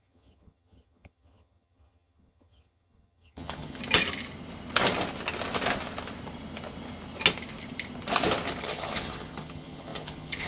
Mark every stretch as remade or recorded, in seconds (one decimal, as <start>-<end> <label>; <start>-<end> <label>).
0.0-3.8 remade; 3.8-8.6 recorded; 8.6-10.5 remade